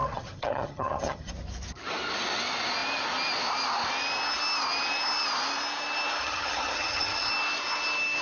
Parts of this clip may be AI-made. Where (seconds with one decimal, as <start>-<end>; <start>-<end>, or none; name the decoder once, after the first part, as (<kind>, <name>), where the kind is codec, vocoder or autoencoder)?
0.0-1.3 (vocoder, HiFi-GAN); 6.2-7.3